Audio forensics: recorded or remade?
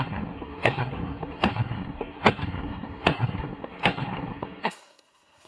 remade